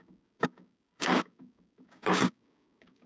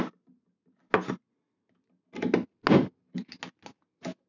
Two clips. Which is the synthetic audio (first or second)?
first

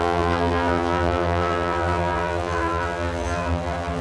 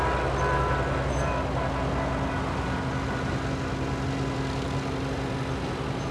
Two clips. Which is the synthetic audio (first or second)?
first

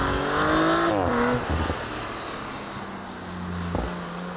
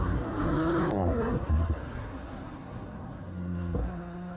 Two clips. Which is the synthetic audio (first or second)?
second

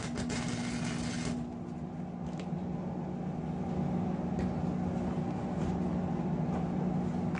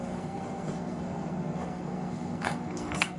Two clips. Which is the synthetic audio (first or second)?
second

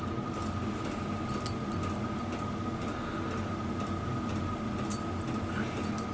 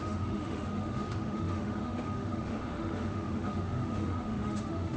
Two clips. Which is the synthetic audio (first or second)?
second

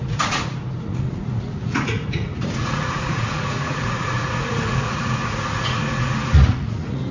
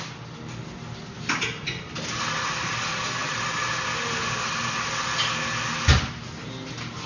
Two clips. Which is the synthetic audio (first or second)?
first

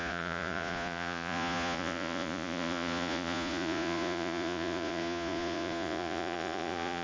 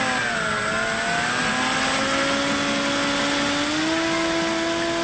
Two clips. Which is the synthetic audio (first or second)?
first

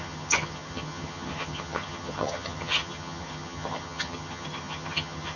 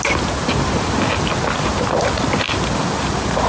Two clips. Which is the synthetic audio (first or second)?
first